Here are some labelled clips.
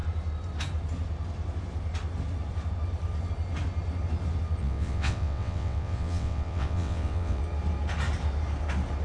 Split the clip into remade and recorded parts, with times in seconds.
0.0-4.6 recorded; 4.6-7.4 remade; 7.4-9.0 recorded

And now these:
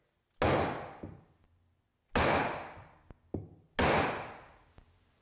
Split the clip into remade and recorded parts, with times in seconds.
0.0-5.2 recorded

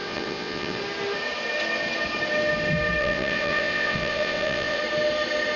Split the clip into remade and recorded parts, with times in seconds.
0.0-0.8 remade; 0.8-3.0 recorded; 3.0-4.8 remade; 4.8-5.6 recorded

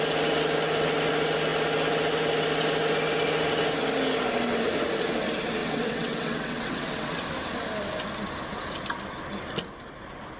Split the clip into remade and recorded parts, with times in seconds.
0.0-5.6 recorded; 5.6-7.2 remade; 7.2-10.4 recorded

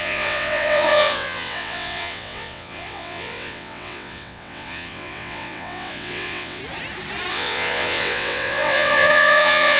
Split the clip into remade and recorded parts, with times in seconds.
0.0-6.6 remade; 6.6-7.3 recorded; 7.3-9.8 remade